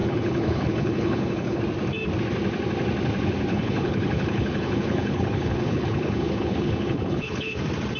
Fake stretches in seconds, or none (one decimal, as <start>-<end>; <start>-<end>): 0.0-1.6; 3.5-7.6